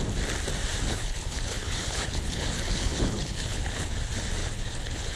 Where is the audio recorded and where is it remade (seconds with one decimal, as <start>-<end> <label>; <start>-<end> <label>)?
0.0-0.9 recorded; 0.9-4.0 remade; 4.0-4.4 recorded; 4.4-5.2 remade